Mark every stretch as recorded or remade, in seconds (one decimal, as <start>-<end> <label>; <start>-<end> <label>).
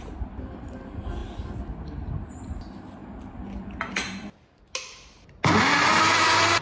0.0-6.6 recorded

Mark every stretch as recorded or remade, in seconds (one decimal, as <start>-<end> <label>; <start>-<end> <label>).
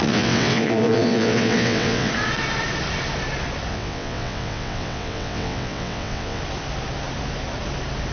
0.0-2.1 remade; 2.1-3.7 recorded; 3.7-6.4 remade; 6.4-8.1 recorded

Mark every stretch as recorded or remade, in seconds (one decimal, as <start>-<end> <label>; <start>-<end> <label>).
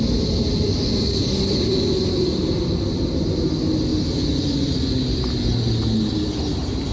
0.0-6.9 recorded